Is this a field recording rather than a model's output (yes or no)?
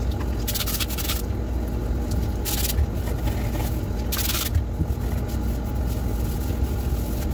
yes